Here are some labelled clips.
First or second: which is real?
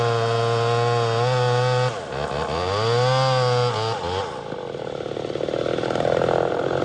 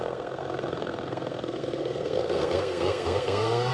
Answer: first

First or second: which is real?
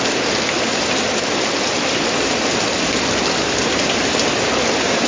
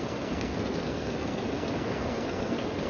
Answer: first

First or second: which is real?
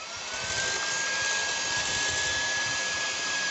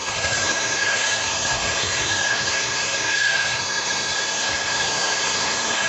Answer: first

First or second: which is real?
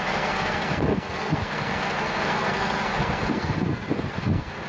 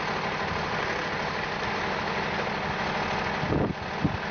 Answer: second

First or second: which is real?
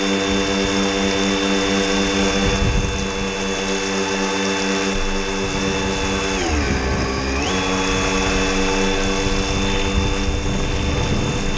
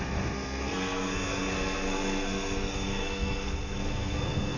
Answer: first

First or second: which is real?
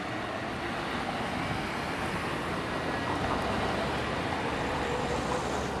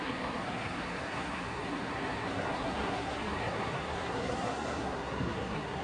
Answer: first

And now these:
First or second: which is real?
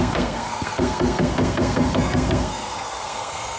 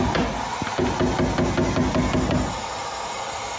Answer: second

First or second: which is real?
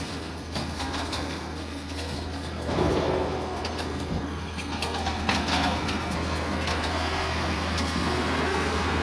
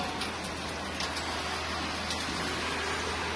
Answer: second